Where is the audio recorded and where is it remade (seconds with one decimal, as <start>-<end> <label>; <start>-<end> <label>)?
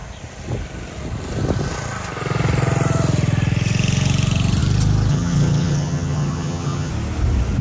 0.0-5.1 recorded; 5.1-6.9 remade; 6.9-7.6 recorded